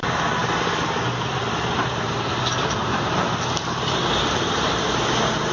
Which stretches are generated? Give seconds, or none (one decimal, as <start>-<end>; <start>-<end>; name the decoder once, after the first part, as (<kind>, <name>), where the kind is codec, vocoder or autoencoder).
none

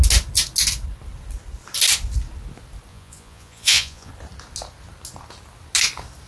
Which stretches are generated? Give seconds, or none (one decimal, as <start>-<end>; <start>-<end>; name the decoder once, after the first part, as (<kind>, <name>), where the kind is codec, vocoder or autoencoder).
2.9-4.1 (vocoder, Vocos)

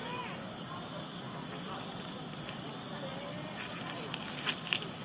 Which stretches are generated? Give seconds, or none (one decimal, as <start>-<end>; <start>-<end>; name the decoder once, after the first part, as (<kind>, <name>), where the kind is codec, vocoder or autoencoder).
none

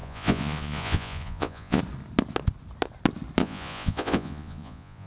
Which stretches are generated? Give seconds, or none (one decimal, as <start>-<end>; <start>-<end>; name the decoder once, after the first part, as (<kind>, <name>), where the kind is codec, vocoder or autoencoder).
0.0-1.8 (vocoder, Vocos); 3.4-5.1

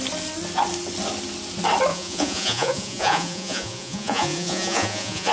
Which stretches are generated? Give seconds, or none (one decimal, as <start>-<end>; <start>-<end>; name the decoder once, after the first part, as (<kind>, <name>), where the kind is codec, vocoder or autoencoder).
1.9-5.3 (vocoder, Vocos)

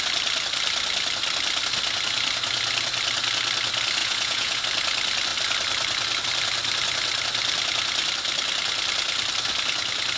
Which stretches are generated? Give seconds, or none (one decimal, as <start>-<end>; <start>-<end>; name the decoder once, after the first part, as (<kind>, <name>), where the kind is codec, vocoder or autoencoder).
4.0-4.6 (vocoder, Vocos)